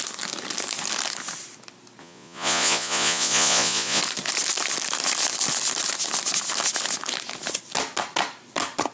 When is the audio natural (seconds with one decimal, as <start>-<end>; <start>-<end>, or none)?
0.0-2.0; 4.0-8.9